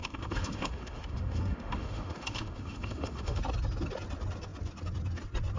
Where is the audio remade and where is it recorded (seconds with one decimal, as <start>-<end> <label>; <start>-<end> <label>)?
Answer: 0.0-3.4 remade; 3.4-5.6 recorded